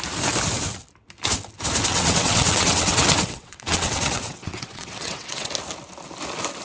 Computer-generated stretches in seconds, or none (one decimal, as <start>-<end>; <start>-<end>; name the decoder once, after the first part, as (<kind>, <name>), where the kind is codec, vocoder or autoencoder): 1.9-5.5 (vocoder, WaveNeXt)